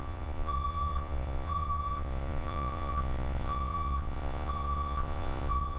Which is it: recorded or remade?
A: remade